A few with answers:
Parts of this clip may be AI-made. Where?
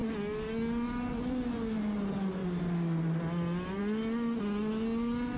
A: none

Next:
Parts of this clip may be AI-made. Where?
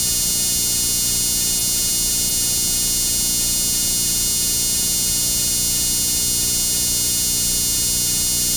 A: none